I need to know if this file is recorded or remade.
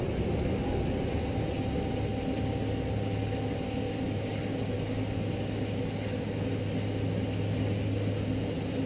recorded